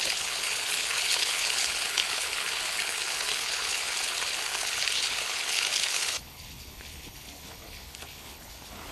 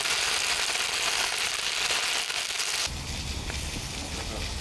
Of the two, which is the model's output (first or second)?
first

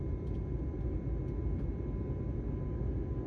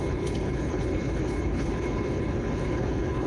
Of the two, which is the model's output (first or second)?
second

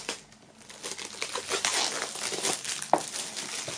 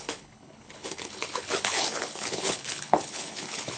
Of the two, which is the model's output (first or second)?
second